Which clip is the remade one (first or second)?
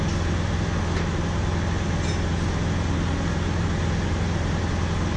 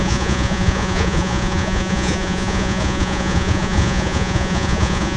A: second